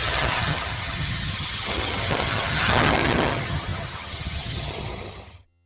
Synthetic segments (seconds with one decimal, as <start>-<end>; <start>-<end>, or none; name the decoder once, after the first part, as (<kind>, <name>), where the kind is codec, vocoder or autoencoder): 0.0-5.7 (vocoder, HiFi-GAN)